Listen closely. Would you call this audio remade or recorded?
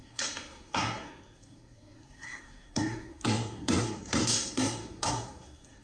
remade